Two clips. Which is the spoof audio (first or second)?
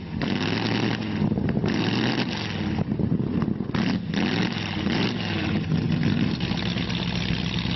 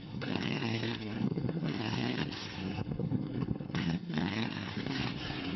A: second